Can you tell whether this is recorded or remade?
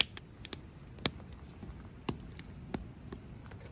recorded